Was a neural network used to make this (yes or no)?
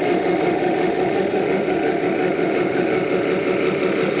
yes